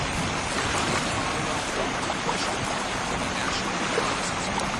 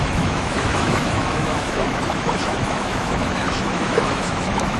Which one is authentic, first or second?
first